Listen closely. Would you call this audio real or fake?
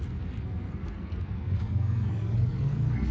fake